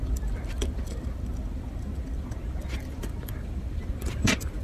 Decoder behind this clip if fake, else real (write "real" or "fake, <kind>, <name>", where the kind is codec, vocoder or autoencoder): fake, vocoder, BigVGAN v2